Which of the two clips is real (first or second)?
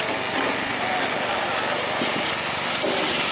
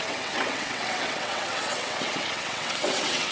first